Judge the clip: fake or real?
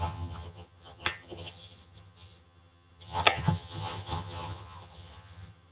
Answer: fake